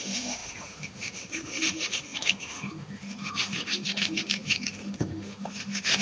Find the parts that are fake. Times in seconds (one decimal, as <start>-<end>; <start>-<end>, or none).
0.0-6.0